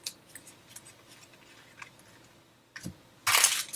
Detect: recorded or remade recorded